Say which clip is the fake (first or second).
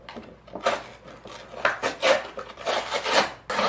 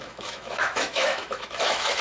second